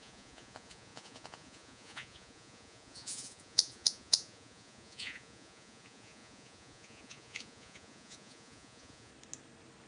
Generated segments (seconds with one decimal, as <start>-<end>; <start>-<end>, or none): 0.0-9.1